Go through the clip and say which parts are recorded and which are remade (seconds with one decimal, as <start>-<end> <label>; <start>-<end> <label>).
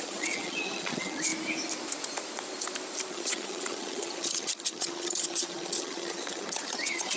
0.0-1.3 remade; 1.3-3.1 recorded; 3.1-7.2 remade